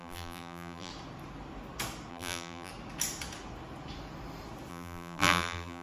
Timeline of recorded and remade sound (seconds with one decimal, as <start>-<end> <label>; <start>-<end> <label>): 0.0-0.9 remade; 0.9-2.1 recorded; 2.1-2.7 remade; 2.7-4.7 recorded; 4.7-5.8 remade